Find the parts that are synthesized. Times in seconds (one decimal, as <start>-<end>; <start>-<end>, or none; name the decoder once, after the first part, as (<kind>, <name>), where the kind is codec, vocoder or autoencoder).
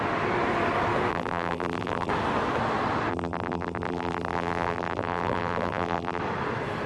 1.1-2.1 (vocoder, BigVGAN v2); 3.1-6.2